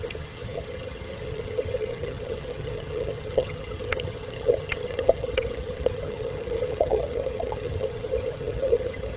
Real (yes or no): no